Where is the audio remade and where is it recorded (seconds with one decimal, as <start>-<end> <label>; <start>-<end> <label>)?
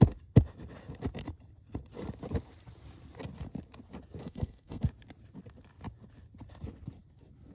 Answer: 0.0-4.2 recorded; 4.2-4.8 remade; 4.8-7.5 recorded